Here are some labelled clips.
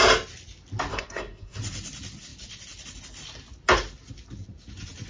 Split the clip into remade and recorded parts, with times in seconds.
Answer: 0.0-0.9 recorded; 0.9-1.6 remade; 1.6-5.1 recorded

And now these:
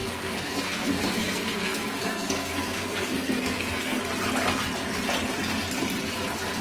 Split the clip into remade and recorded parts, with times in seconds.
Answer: 0.0-4.0 remade; 4.0-6.6 recorded

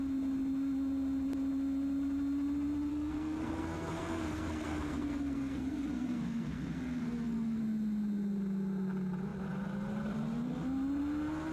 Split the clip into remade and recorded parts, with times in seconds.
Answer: 0.0-2.9 recorded; 2.9-7.6 remade; 7.6-11.5 recorded